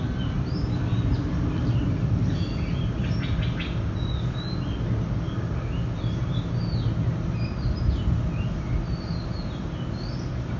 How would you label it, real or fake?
real